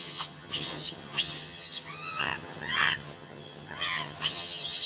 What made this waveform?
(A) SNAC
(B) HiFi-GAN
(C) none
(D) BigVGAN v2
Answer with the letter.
B